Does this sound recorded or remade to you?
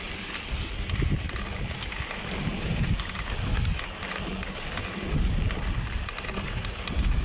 recorded